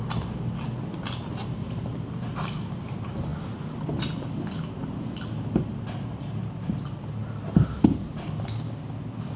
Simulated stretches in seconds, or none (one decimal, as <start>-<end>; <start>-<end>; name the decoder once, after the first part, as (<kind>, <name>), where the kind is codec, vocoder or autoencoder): none